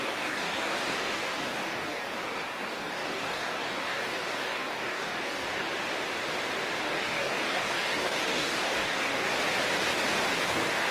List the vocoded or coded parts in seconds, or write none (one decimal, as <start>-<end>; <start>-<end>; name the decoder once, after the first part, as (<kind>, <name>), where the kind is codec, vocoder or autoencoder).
0.0-5.7 (codec, DAC); 6.8-9.3; 10.4-10.9